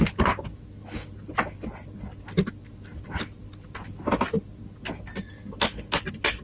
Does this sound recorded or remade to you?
recorded